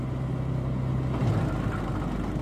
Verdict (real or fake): real